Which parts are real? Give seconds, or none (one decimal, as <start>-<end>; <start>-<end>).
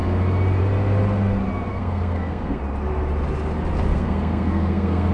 0.0-1.7; 2.6-3.9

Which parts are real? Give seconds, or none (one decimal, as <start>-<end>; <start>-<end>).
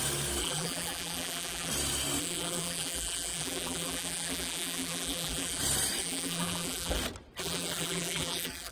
0.0-0.4; 1.7-2.2; 5.6-6.0; 7.0-7.4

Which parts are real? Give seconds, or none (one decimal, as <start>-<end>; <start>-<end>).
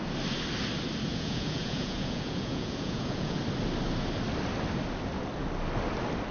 0.0-1.1; 3.4-6.3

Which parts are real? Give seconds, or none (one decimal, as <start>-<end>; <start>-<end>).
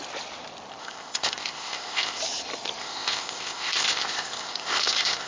0.0-0.8; 2.2-2.8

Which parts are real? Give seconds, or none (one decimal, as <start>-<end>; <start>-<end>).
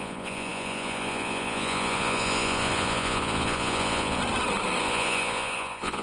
4.2-4.8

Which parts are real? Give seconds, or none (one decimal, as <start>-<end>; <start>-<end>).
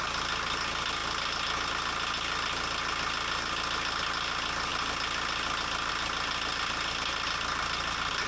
0.0-8.3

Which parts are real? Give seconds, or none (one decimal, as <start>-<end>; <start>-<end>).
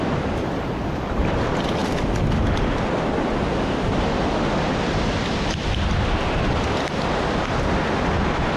0.0-8.6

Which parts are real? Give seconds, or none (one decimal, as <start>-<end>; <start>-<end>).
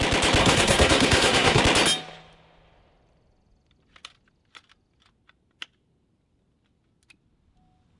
0.0-0.4; 1.6-8.0